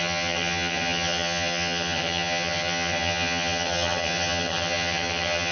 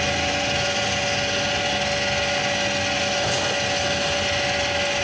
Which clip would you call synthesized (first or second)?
first